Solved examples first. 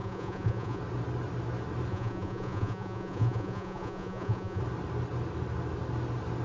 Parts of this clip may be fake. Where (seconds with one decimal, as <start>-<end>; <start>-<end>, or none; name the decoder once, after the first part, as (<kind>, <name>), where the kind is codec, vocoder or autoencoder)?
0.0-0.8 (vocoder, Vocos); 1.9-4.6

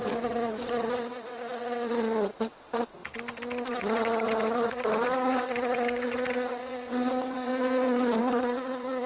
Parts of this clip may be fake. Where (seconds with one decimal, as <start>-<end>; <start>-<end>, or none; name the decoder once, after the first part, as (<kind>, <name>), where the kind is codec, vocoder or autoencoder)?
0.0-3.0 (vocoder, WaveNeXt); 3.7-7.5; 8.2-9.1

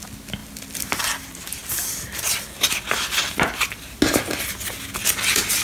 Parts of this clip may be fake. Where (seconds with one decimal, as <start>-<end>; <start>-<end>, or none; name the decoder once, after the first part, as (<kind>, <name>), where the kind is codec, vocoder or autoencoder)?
none

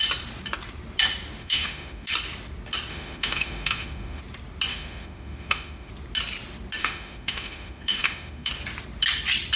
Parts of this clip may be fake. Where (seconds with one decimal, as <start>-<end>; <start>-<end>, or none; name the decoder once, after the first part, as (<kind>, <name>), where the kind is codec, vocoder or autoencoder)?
1.4-2.1 (autoencoder, DAC-VAE); 2.9-4.2; 4.7-5.9; 6.8-8.5

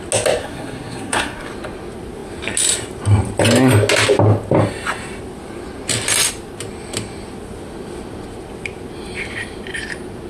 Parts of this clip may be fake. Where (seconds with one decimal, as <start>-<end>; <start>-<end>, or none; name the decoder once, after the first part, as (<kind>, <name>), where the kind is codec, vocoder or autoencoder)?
0.4-1.5 (codec, SNAC)

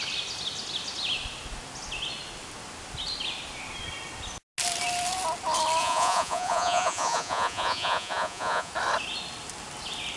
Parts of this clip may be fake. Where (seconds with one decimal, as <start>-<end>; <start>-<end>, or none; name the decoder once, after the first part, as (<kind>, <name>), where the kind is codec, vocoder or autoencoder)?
5.8-8.7 (vocoder, Vocos)

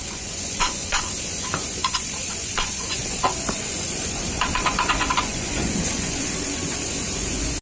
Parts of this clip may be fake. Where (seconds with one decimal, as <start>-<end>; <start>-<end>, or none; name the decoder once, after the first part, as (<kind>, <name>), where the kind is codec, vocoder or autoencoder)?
0.0-7.6 (vocoder, Vocos)

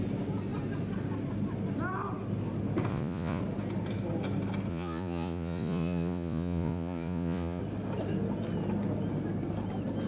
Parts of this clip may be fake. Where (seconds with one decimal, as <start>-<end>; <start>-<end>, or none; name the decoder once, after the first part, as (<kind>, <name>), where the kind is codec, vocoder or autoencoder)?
2.9-3.4 (vocoder, Vocos); 4.7-7.6